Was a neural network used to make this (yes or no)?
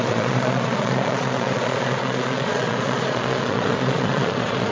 yes